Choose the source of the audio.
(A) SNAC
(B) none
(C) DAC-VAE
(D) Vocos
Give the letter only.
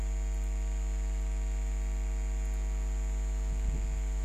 B